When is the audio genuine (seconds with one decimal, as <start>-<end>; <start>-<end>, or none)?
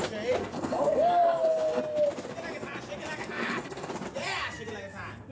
0.0-0.4; 1.8-3.2; 3.9-5.3